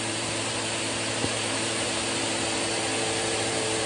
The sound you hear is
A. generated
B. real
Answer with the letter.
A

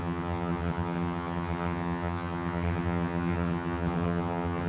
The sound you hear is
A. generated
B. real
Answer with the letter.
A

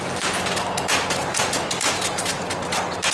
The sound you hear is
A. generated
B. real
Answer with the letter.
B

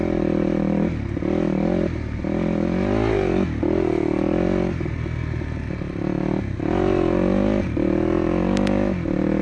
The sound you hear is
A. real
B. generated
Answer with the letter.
A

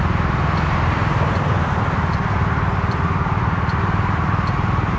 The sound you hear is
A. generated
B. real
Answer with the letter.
B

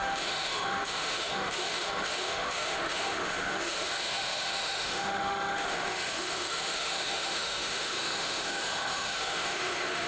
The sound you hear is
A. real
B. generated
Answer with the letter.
B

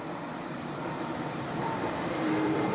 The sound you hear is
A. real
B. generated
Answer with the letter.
B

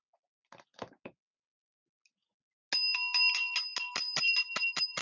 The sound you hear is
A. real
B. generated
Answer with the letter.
A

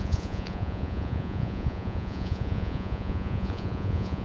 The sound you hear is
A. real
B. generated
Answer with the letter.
B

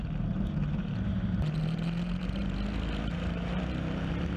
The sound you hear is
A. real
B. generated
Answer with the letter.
A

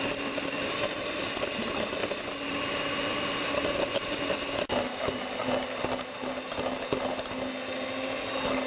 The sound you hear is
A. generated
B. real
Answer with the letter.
B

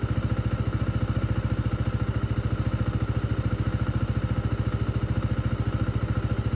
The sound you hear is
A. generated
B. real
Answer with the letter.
B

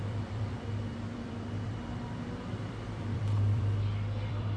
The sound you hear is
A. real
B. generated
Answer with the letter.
B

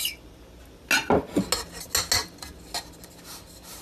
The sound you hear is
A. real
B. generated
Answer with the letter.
A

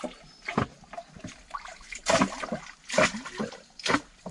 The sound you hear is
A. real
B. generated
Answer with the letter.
A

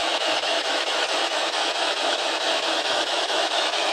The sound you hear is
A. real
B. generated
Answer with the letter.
B